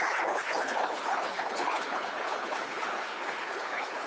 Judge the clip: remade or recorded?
remade